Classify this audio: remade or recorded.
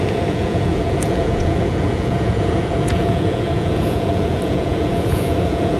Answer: remade